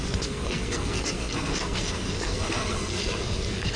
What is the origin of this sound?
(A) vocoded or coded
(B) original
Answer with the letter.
A